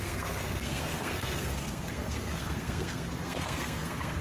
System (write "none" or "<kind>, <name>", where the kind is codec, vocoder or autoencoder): codec, SNAC